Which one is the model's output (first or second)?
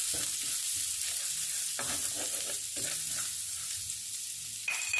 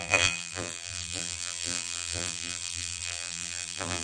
second